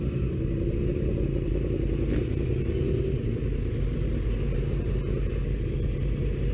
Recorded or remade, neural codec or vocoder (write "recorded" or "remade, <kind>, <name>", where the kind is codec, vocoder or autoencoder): recorded